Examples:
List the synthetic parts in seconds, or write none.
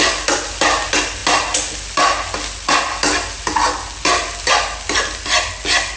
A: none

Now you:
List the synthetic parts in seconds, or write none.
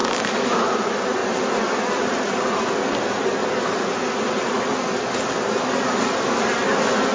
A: 0.0-0.7 (codec, DAC)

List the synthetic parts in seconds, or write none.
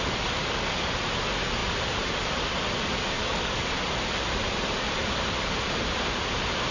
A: 0.4-0.9 (codec, DAC); 3.2-3.7